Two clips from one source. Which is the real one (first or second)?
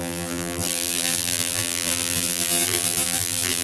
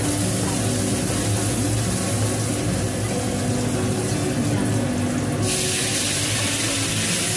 second